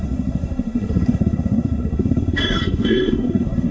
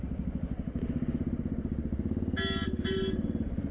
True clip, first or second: second